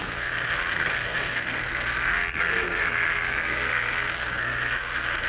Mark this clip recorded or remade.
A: remade